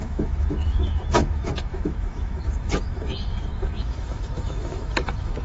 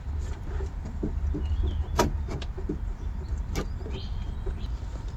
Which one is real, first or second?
second